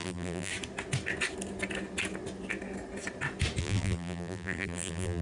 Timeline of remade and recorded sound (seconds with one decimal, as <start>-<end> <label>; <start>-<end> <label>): 0.0-0.5 remade; 0.5-3.6 recorded; 3.6-5.2 remade